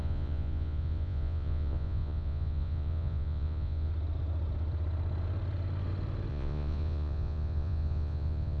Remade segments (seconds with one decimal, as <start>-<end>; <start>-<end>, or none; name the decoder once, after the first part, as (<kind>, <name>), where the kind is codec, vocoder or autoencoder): 0.0-3.9 (vocoder, Vocos); 6.3-8.6